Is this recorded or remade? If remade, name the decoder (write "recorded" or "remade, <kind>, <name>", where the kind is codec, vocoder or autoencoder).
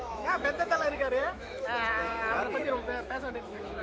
remade, autoencoder, DAC-VAE